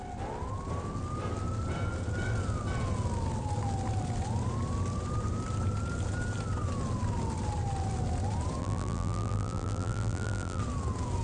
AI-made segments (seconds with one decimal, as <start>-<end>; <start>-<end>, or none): 8.6-10.6